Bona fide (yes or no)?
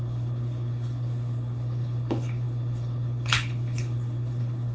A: no